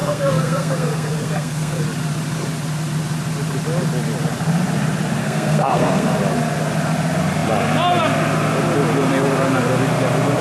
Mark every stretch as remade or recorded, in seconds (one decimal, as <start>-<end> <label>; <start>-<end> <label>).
0.0-1.8 remade; 1.8-5.2 recorded; 5.2-6.2 remade; 6.2-10.4 recorded